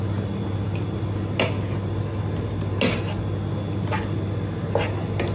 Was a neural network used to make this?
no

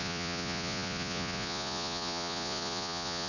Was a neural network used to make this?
yes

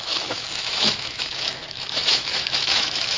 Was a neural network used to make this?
yes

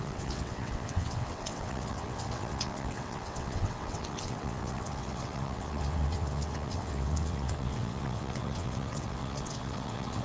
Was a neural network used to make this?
yes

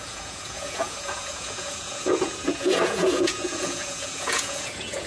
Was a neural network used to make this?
yes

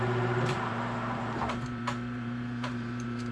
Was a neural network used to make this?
yes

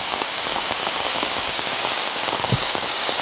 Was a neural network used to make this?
yes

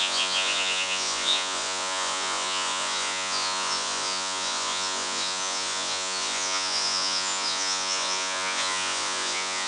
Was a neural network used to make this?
yes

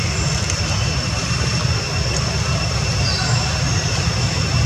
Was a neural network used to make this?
no